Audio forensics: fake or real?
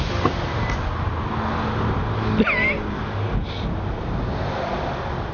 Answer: real